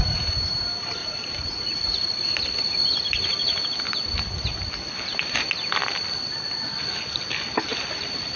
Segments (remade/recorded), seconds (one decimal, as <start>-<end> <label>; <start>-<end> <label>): 0.0-1.0 recorded; 1.0-2.3 remade; 2.3-8.4 recorded